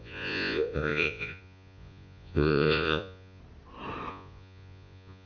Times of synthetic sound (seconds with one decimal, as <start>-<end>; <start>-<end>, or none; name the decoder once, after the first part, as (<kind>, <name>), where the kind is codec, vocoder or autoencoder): 0.0-3.4 (vocoder, Vocos); 4.1-5.3